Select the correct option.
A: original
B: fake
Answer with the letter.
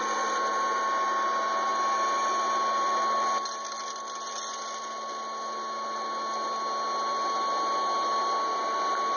A